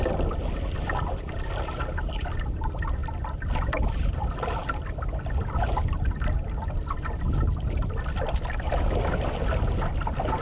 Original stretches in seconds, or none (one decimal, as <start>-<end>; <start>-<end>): 0.0-10.4